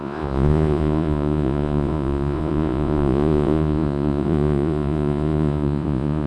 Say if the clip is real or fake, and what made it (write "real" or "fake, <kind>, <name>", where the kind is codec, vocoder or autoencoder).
fake, vocoder, Vocos